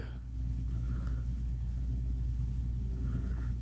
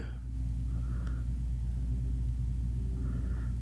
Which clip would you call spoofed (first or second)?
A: first